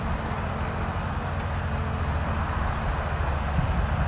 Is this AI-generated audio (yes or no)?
no